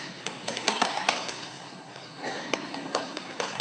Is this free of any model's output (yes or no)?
no